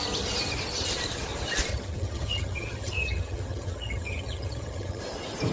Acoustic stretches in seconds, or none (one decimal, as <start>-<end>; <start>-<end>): 0.0-1.7; 5.0-5.5